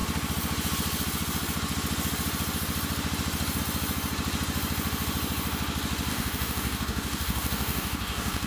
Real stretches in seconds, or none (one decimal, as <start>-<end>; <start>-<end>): 0.0-6.1